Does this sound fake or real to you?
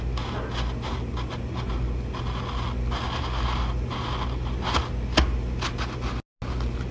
real